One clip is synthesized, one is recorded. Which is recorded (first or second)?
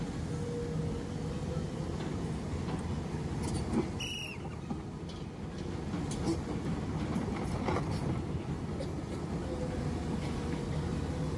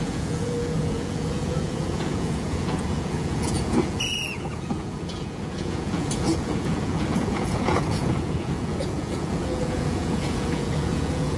first